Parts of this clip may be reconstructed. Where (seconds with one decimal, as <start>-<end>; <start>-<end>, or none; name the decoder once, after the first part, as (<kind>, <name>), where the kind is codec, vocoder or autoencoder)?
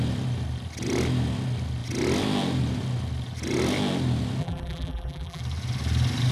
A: 4.4-5.4 (vocoder, BigVGAN v2)